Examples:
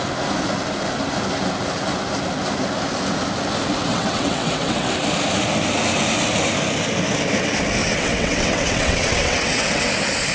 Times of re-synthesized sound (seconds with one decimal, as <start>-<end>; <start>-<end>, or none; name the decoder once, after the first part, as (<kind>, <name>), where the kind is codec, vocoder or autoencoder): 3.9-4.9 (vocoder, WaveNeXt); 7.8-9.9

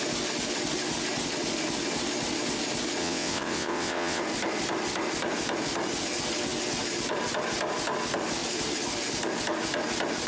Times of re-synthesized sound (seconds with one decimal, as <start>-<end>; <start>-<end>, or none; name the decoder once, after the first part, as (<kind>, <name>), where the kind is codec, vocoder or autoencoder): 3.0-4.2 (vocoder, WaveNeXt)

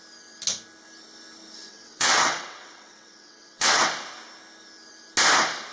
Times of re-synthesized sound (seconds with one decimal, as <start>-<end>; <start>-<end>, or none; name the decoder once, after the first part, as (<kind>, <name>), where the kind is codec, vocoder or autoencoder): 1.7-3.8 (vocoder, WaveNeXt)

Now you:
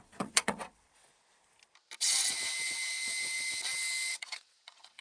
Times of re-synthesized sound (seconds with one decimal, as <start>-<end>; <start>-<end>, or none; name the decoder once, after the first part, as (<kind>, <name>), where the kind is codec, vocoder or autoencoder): 0.0-1.1 (vocoder, WaveNeXt); 4.1-5.0

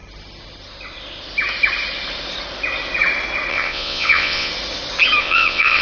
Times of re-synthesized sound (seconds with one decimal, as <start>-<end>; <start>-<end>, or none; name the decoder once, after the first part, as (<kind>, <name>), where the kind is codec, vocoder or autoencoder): 3.5-4.5 (vocoder, WaveNeXt); 5.2-5.8

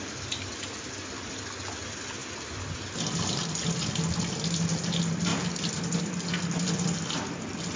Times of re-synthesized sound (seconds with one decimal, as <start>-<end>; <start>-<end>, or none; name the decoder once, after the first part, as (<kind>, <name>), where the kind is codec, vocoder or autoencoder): none